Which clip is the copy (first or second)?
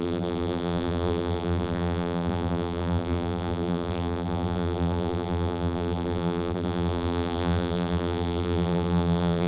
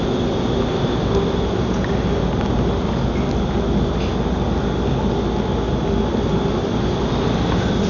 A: first